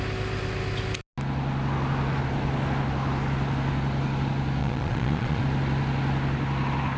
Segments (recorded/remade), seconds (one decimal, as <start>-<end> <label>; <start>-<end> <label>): 0.0-4.6 recorded; 4.6-5.4 remade; 5.4-7.0 recorded

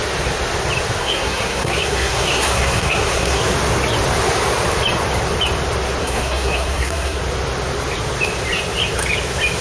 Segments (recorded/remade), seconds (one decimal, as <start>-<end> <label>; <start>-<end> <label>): 0.0-1.0 recorded; 1.0-3.4 remade; 3.4-6.0 recorded; 6.0-7.2 remade; 7.2-9.6 recorded

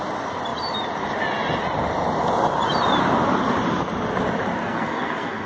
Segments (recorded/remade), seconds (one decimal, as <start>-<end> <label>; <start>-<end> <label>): 0.0-4.6 recorded; 4.6-5.5 remade

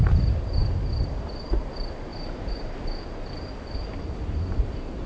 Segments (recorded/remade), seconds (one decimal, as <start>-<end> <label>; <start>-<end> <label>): 0.0-0.6 recorded; 0.6-1.6 remade; 1.6-2.1 recorded; 2.1-2.8 remade; 2.8-5.1 recorded

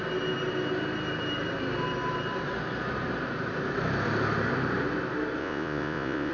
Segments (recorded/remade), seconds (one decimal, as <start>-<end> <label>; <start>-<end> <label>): 0.0-5.4 recorded; 5.4-6.3 remade

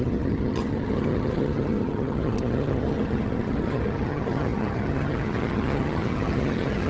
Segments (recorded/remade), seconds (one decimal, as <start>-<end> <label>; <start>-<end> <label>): 0.0-6.9 remade

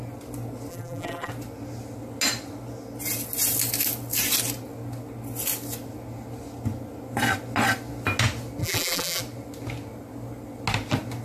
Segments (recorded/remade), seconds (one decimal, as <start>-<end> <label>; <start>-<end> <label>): 0.0-0.7 recorded; 0.7-1.3 remade; 1.3-8.6 recorded; 8.6-9.2 remade; 9.2-11.2 recorded